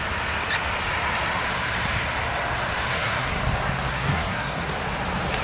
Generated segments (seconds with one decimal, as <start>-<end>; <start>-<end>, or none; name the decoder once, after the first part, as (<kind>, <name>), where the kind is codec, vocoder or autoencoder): 2.9-3.4 (codec, SNAC); 3.9-4.7